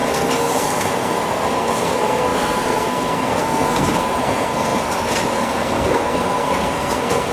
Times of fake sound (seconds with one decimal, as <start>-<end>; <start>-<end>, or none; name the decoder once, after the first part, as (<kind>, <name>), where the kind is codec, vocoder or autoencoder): 0.0-7.3 (codec, SNAC)